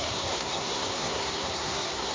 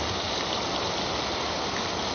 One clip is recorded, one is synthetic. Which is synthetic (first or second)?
first